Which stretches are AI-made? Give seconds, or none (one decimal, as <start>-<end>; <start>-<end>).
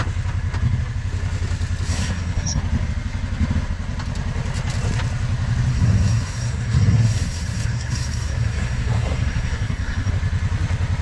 1.9-2.6; 5.7-10.1